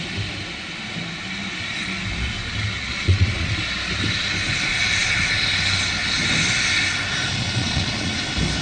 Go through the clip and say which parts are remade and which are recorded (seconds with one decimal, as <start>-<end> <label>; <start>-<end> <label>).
0.0-2.9 recorded; 2.9-3.6 remade; 3.6-7.4 recorded; 7.4-8.2 remade; 8.2-8.6 recorded